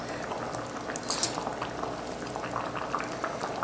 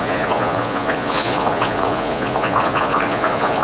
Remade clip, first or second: second